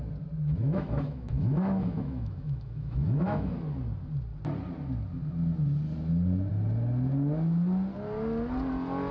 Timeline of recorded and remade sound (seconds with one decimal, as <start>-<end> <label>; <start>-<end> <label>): 0.0-0.6 recorded; 0.6-3.5 remade; 3.5-9.1 recorded